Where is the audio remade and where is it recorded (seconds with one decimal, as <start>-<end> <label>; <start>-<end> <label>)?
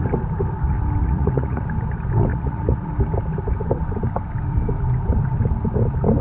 0.0-1.0 recorded; 1.0-1.6 remade; 1.6-2.3 recorded; 2.3-2.9 remade; 2.9-6.2 recorded